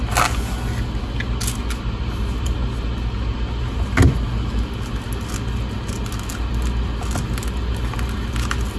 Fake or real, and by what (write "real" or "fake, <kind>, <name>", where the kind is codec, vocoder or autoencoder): real